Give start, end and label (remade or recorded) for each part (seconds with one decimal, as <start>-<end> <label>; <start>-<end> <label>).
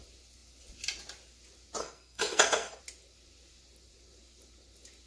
0.0-1.8 recorded; 1.8-2.8 remade; 2.8-5.1 recorded